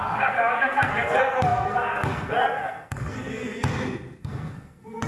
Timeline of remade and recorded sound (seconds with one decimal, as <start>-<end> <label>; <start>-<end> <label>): 0.0-3.7 remade; 3.7-4.2 recorded; 4.2-5.1 remade